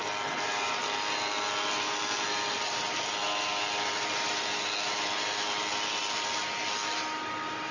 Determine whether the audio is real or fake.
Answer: real